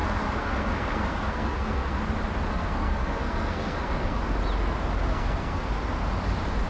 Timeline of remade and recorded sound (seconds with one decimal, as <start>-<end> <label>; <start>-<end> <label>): 0.0-2.0 remade; 2.0-2.5 recorded; 2.5-4.2 remade; 4.2-5.1 recorded; 5.1-5.7 remade; 5.7-6.7 recorded